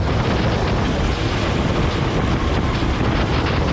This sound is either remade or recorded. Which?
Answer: recorded